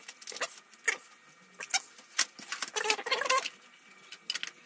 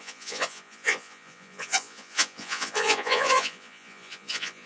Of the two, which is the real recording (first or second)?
first